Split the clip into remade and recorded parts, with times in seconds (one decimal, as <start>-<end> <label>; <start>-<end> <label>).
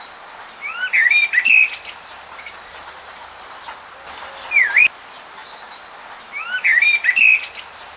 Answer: 0.0-8.0 recorded